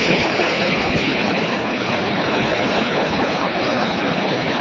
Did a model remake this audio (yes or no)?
yes